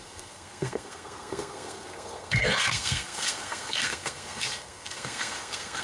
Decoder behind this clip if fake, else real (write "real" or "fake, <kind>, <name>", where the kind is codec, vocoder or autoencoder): fake, codec, SNAC